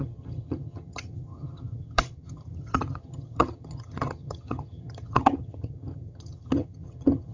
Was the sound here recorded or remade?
remade